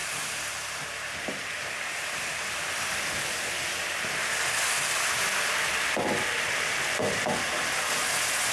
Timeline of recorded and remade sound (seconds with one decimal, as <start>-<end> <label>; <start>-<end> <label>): 0.0-3.5 remade; 3.5-8.5 recorded